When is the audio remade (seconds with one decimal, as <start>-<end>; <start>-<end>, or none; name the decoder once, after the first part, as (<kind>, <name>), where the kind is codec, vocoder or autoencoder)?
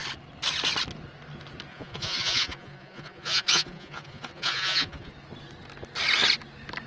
1.7-5.1 (vocoder, Vocos)